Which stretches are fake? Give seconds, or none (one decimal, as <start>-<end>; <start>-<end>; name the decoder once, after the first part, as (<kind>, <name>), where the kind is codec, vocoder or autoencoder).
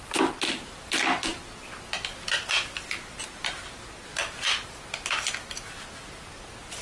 none